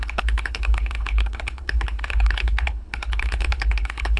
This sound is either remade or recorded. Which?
remade